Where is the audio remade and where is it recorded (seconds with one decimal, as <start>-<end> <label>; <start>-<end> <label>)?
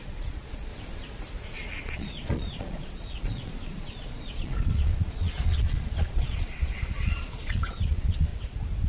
0.0-0.7 remade; 0.7-1.8 recorded; 1.8-8.3 remade; 8.3-8.9 recorded